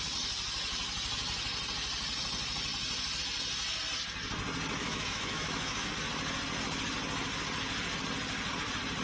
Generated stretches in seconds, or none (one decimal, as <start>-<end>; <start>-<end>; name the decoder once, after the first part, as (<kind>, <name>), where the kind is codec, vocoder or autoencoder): 4.8-5.9 (autoencoder, DAC-VAE)